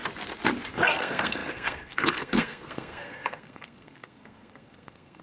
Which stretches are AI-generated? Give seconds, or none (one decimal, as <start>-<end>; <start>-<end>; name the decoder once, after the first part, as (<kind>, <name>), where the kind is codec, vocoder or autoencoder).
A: 0.7-5.2 (codec, SNAC)